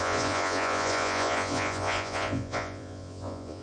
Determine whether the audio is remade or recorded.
remade